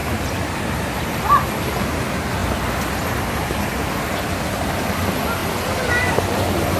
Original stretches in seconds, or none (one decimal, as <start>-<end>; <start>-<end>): 0.0-6.8